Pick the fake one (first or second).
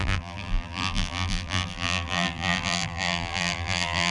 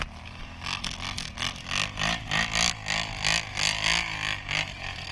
first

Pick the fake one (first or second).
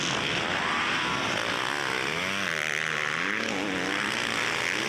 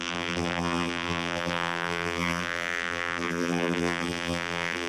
second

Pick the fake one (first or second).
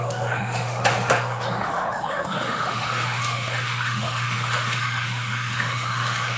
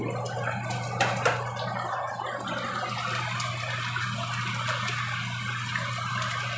first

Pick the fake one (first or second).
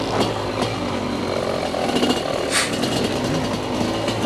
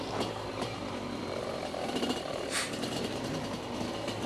second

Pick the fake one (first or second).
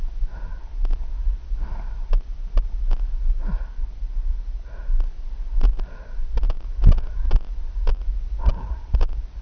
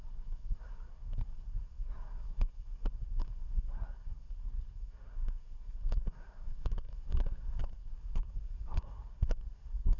second